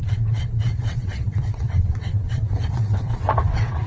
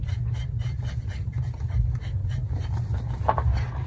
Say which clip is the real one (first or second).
second